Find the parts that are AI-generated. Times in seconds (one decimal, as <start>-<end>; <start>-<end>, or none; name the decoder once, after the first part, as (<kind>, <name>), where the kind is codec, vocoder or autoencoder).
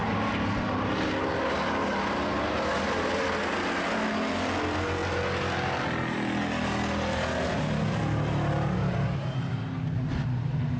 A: none